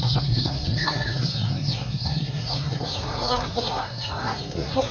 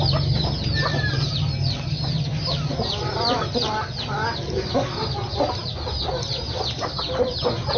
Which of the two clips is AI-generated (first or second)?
first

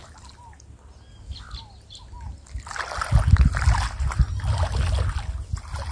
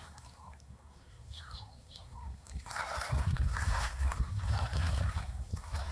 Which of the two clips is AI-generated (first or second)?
second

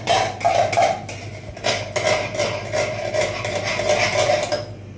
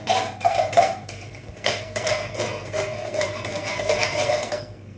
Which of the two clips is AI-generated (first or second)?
second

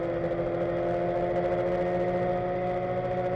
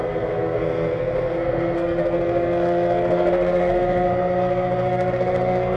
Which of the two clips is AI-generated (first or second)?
second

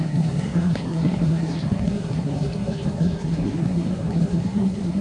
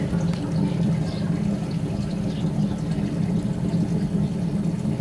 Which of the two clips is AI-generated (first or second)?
first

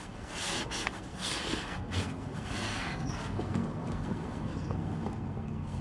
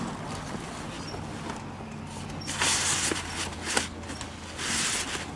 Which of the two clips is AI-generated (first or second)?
first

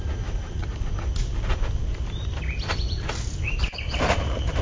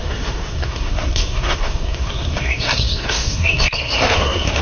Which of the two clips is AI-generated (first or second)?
second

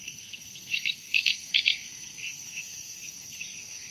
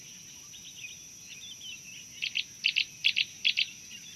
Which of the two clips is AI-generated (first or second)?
first